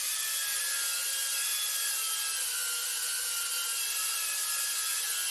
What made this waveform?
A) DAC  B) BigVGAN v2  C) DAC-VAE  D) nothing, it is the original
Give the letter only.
D